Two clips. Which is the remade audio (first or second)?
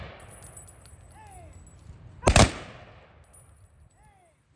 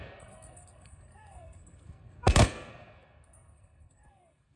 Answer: second